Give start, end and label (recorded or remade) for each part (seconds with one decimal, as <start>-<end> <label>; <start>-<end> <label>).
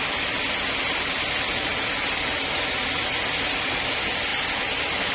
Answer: 0.0-5.1 recorded